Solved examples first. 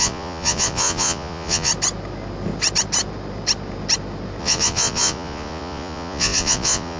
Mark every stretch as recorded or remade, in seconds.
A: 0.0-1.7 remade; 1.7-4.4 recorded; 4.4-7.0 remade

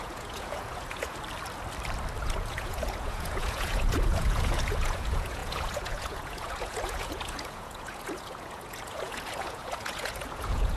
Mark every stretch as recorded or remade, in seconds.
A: 0.0-1.1 remade; 1.1-2.2 recorded; 2.2-10.8 remade

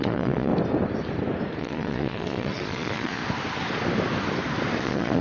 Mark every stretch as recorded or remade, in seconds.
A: 0.0-0.5 remade; 0.5-1.6 recorded; 1.6-3.2 remade; 3.2-4.8 recorded; 4.8-5.2 remade

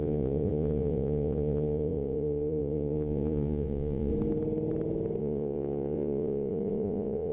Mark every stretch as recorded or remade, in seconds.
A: 0.0-4.1 remade; 4.1-5.2 recorded; 5.2-7.3 remade

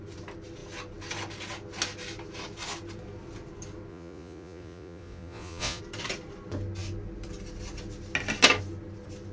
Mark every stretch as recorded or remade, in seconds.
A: 0.0-3.9 recorded; 3.9-5.8 remade; 5.8-9.3 recorded

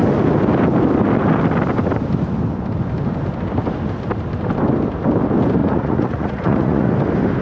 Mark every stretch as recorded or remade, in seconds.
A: 0.0-5.6 recorded; 5.6-6.9 remade; 6.9-7.4 recorded